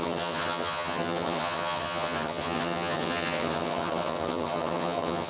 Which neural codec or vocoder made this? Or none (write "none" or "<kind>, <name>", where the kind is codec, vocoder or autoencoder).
vocoder, HiFi-GAN